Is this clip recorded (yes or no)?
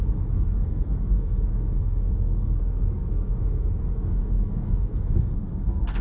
no